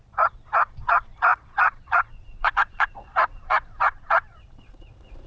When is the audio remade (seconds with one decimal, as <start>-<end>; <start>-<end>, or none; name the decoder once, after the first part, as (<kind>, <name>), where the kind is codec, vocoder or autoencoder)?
0.0-5.3 (vocoder, Vocos)